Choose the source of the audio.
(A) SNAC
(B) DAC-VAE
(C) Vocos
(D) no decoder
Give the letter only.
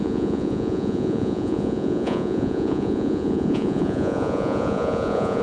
C